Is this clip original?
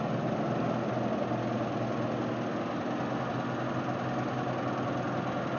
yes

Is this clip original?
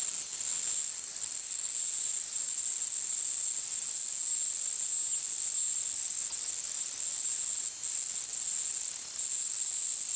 yes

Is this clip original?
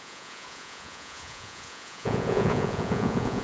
no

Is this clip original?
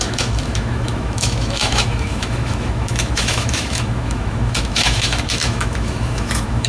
no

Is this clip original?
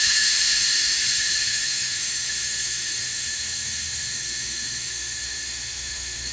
no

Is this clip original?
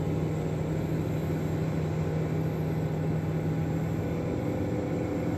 yes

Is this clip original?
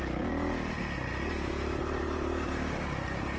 yes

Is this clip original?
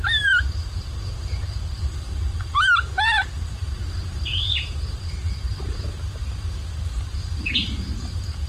no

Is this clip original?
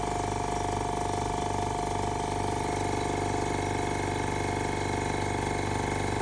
yes